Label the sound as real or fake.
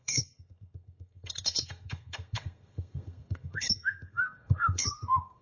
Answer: fake